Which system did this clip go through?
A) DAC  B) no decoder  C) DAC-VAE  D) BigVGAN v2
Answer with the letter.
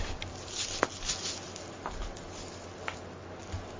B